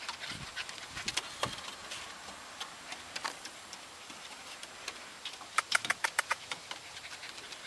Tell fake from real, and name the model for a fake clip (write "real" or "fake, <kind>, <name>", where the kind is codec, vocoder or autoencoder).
real